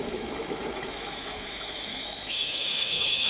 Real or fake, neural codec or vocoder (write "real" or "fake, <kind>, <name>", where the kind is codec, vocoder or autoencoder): fake, autoencoder, DAC-VAE